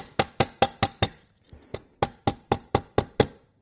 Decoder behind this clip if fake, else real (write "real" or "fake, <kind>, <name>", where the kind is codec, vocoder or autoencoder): real